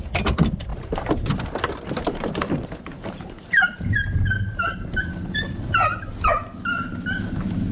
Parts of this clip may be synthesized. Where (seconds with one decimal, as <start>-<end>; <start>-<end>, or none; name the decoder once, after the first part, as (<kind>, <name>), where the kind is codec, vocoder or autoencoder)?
0.7-5.0 (vocoder, BigVGAN v2)